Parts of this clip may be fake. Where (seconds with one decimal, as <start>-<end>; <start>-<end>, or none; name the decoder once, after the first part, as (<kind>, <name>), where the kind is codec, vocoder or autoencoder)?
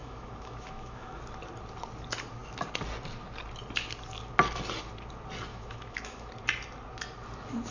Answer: 0.0-1.2 (autoencoder, DAC-VAE); 5.5-6.3